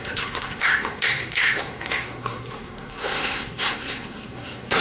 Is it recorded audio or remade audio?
remade